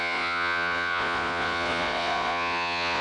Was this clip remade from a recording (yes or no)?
yes